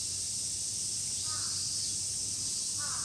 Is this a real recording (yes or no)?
yes